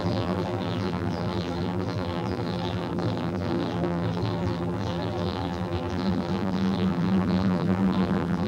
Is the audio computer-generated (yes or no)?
yes